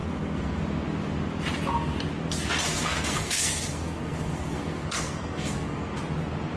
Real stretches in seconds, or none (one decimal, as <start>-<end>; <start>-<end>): 0.6-2.6; 6.0-6.6